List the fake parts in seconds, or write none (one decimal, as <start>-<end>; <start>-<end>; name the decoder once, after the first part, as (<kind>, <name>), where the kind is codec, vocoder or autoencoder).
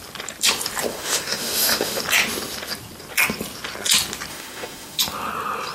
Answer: 0.9-2.0 (autoencoder, DAC-VAE); 4.3-5.0